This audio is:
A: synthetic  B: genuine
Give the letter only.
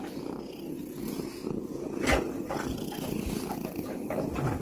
B